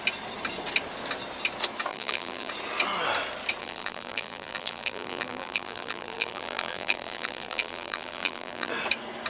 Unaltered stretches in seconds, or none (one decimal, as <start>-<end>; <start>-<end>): 0.0-1.9; 2.5-3.6; 8.7-9.3

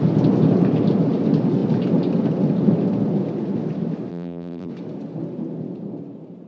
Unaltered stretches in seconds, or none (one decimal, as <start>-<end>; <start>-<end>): 0.0-4.1; 4.7-6.5

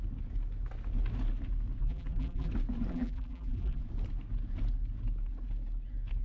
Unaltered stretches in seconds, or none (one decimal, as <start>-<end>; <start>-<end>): 0.0-1.8; 2.5-2.9; 3.8-6.2